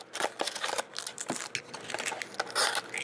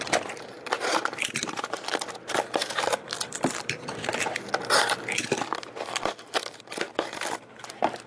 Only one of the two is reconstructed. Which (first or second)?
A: second